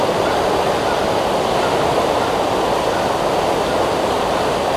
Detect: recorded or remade recorded